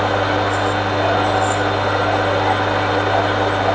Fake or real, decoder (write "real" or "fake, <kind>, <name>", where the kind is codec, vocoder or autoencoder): real